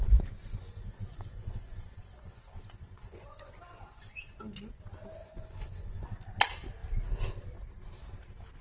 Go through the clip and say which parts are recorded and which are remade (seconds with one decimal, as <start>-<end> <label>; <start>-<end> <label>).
0.0-0.5 recorded; 0.5-4.4 remade; 4.4-5.2 recorded; 5.2-6.0 remade; 6.0-8.6 recorded